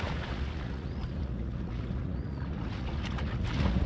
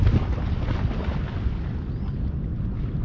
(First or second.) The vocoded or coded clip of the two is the first